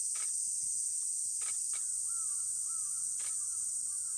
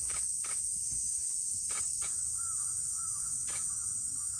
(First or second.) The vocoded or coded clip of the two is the second